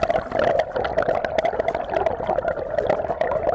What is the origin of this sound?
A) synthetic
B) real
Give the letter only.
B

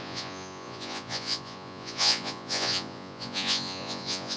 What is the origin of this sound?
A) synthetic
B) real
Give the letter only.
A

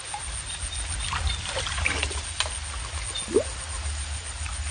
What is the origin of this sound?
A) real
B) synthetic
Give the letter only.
A